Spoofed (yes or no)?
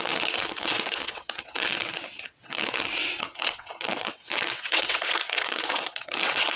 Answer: yes